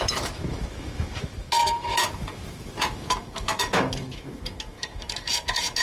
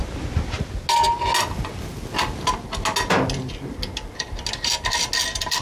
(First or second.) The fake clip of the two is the first